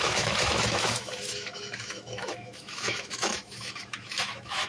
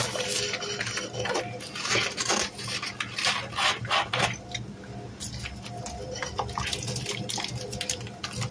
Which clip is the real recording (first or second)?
second